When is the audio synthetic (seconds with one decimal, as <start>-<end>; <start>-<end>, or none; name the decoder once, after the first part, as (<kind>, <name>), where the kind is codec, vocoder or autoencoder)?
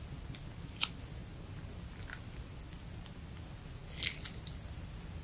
none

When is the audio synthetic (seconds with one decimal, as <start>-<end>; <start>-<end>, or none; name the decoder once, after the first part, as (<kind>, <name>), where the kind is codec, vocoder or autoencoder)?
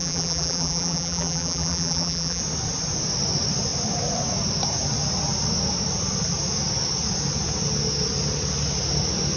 0.0-2.4 (vocoder, BigVGAN v2)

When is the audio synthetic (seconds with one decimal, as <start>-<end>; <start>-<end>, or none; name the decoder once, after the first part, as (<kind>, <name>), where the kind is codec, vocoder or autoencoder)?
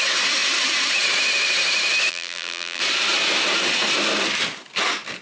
2.1-2.8 (vocoder, BigVGAN v2)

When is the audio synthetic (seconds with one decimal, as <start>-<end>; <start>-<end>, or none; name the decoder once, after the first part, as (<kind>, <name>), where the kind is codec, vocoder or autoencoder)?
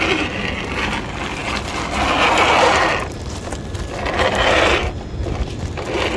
none